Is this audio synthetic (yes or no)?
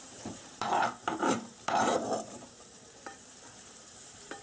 yes